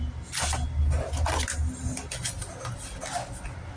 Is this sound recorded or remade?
recorded